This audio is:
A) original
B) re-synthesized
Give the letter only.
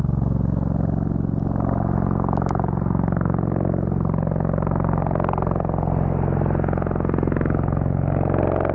A